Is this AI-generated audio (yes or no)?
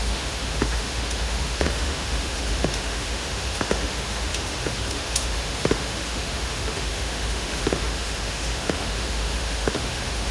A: yes